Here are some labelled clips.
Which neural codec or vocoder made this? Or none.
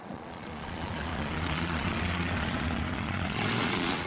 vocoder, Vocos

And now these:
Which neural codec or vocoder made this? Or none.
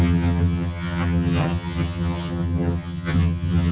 vocoder, HiFi-GAN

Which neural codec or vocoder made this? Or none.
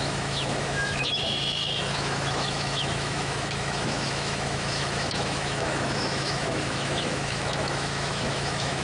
autoencoder, DAC-VAE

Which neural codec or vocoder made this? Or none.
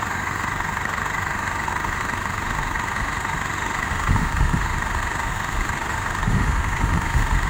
autoencoder, DAC-VAE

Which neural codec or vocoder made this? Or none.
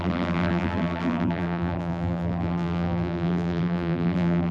vocoder, BigVGAN v2